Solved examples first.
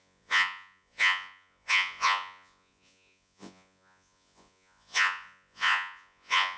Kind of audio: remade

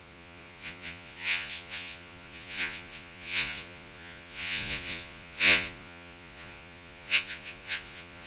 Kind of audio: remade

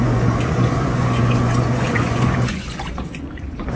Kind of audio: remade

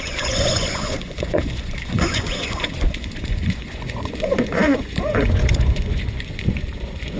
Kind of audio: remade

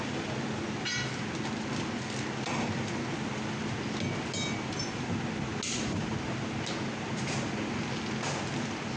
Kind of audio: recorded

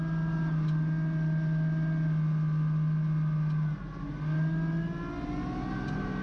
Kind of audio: recorded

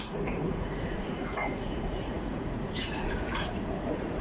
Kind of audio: remade